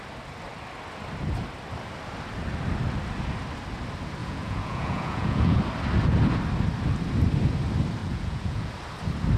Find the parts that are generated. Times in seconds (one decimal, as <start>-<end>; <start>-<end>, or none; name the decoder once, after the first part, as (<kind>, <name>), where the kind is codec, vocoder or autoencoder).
4.2-5.6 (vocoder, Vocos); 8.0-8.7